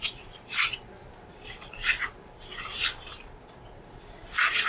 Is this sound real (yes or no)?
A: no